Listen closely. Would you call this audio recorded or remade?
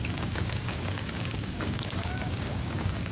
remade